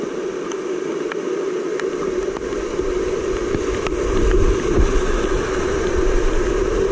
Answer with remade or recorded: recorded